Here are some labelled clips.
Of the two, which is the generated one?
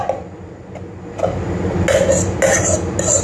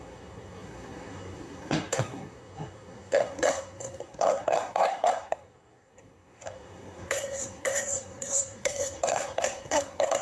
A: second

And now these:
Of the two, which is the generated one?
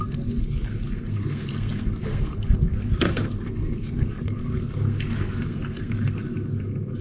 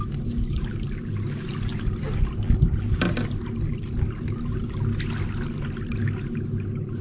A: first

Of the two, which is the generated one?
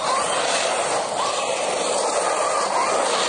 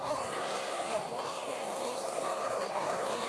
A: second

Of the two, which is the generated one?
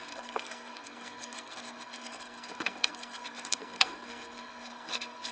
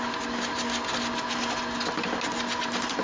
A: first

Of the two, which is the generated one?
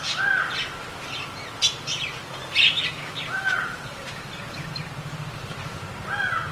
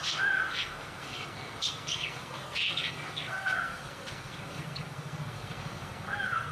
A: second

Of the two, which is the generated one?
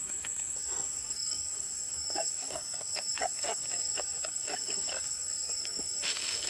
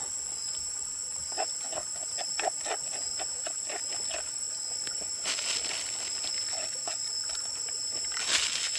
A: first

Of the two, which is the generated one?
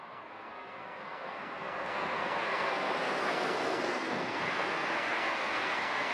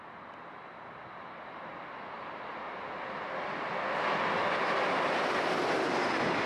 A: first